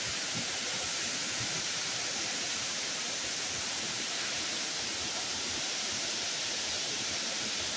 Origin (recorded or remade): remade